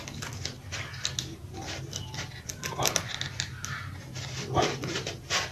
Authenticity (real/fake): real